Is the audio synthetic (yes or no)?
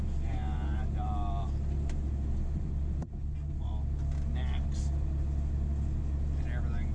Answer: no